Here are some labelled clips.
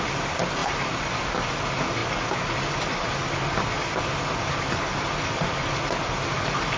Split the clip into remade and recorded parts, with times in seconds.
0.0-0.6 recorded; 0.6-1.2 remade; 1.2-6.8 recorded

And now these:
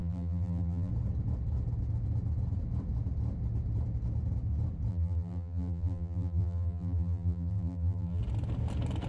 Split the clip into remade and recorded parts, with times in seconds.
0.0-0.9 remade; 0.9-4.9 recorded; 4.9-8.2 remade; 8.2-9.1 recorded

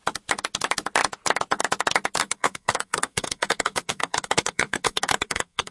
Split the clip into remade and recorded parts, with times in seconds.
0.0-2.2 recorded; 2.2-5.7 remade

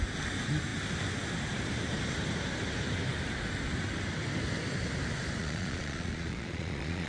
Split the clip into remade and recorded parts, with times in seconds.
0.0-5.4 recorded; 5.4-7.1 remade

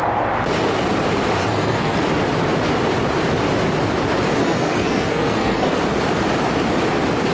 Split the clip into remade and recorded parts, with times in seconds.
0.0-1.4 recorded; 1.4-2.0 remade; 2.0-4.4 recorded; 4.4-5.8 remade; 5.8-7.3 recorded